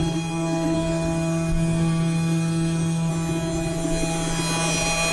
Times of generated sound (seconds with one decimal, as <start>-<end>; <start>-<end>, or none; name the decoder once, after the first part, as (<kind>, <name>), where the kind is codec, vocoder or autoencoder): 0.0-3.1 (codec, SNAC)